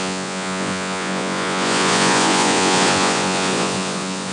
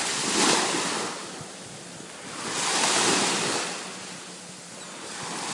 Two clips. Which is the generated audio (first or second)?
first